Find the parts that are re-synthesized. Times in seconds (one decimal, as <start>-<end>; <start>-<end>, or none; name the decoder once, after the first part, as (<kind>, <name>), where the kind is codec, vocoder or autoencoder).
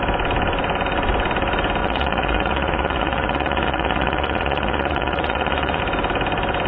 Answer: 1.8-5.8 (vocoder, Vocos)